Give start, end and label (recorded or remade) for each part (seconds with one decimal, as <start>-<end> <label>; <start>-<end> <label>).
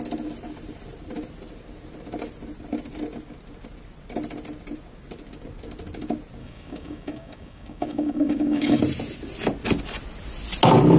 0.0-6.4 recorded; 6.4-8.8 remade; 8.8-11.0 recorded